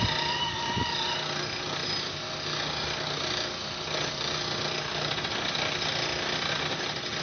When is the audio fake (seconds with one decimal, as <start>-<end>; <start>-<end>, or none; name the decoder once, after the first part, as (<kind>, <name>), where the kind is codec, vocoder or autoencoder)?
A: none

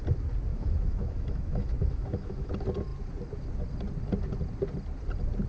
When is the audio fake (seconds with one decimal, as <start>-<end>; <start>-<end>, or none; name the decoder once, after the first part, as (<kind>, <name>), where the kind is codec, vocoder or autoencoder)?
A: 0.5-2.5 (autoencoder, DAC-VAE)

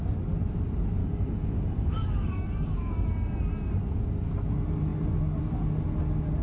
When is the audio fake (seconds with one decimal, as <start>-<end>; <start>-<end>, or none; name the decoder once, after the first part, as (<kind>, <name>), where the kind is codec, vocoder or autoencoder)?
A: 1.0-3.1 (codec, DAC)

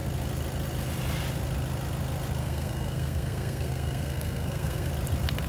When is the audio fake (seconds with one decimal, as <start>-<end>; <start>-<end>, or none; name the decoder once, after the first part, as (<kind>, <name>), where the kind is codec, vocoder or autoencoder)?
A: 2.4-4.9 (codec, SNAC)

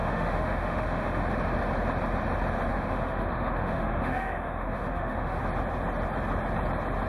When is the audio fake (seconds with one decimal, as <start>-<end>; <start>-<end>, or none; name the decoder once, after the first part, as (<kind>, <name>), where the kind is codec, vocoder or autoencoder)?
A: 0.0-1.2 (autoencoder, DAC-VAE); 2.7-5.4

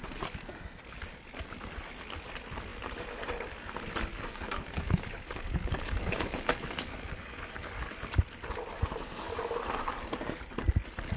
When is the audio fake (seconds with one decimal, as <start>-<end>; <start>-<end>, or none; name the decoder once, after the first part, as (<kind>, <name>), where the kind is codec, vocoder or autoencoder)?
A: 4.1-7.9 (codec, DAC)